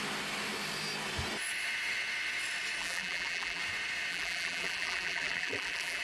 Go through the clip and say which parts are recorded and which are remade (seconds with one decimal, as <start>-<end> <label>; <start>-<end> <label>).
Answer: 0.0-2.8 recorded; 2.8-3.6 remade; 3.6-4.1 recorded; 4.1-6.0 remade